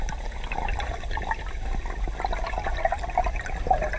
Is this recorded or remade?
recorded